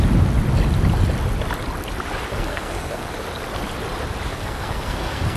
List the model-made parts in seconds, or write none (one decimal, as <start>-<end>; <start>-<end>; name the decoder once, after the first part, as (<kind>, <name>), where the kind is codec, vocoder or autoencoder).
2.3-3.1 (codec, SNAC); 4.3-5.4